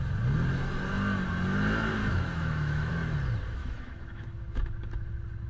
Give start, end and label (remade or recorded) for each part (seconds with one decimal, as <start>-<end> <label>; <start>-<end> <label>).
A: 0.0-2.0 recorded; 2.0-2.9 remade; 2.9-3.6 recorded; 3.6-4.6 remade; 4.6-5.5 recorded